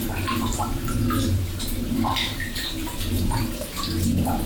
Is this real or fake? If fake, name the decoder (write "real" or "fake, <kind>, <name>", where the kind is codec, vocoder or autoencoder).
fake, vocoder, BigVGAN v2